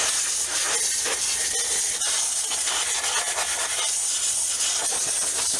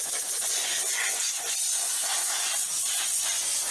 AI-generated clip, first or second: second